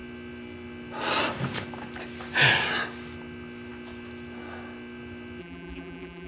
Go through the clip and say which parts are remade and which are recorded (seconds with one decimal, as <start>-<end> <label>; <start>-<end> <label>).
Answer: 0.0-5.4 recorded; 5.4-6.3 remade